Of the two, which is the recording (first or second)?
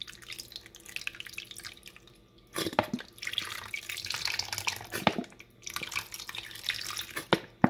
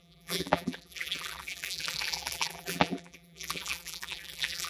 first